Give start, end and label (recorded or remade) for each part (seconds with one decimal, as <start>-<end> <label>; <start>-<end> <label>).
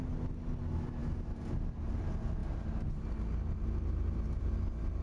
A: 0.0-5.0 recorded